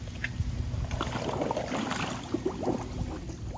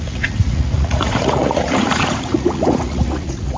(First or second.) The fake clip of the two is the second